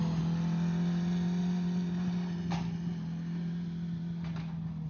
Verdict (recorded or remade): recorded